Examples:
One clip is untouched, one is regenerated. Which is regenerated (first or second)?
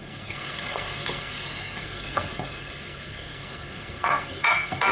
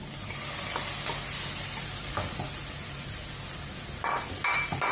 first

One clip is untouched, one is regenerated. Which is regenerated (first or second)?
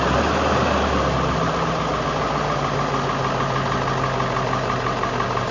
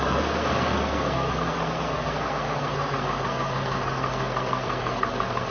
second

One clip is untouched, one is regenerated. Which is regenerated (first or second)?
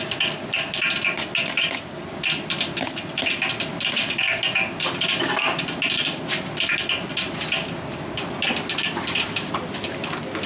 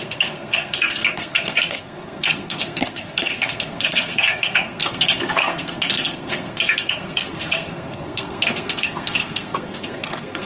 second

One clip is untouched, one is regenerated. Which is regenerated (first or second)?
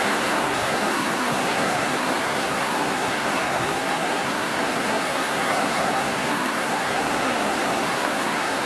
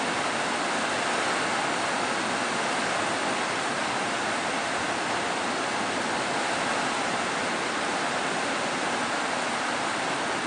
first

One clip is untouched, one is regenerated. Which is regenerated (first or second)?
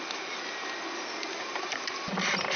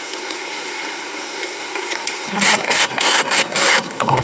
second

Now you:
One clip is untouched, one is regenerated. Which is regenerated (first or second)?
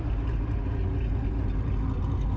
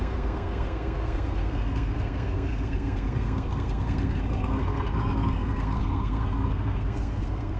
second